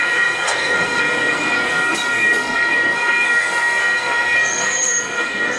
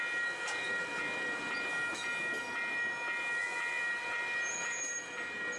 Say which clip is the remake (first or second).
first